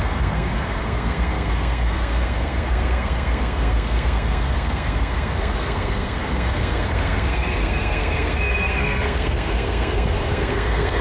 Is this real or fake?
fake